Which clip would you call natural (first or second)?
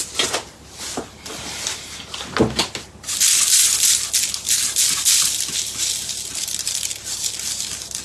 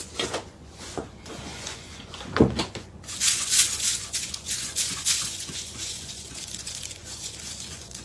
first